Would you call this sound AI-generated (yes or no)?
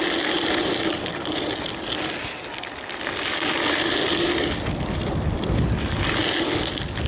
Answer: no